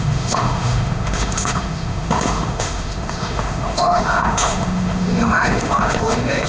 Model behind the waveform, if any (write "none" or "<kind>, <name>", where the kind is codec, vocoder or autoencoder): autoencoder, DAC-VAE